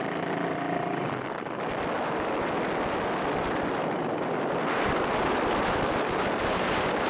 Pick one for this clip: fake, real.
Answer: fake